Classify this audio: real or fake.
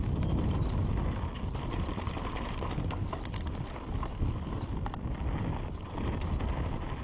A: real